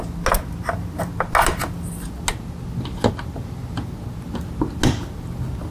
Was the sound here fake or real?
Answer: real